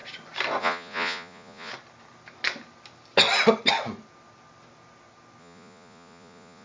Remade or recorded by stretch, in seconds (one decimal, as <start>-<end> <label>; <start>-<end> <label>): 0.0-0.6 recorded; 0.6-1.7 remade; 1.7-5.4 recorded; 5.4-6.6 remade